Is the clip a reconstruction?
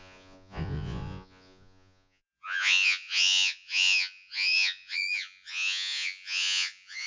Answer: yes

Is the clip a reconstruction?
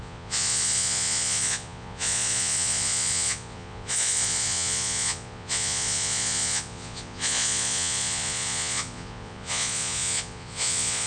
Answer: yes